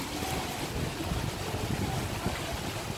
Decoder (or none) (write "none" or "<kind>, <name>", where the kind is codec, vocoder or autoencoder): none